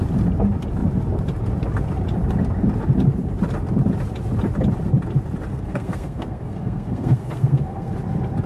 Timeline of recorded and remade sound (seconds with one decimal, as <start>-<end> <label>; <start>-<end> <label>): 0.0-5.5 recorded; 5.5-7.9 remade; 7.9-8.5 recorded